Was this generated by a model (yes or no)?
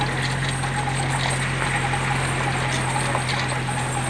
no